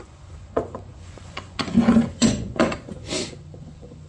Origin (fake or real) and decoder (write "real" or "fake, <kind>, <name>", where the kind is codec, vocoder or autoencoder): fake, vocoder, Vocos